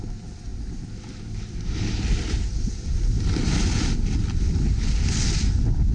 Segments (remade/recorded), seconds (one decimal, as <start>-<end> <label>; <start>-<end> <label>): 0.0-5.9 recorded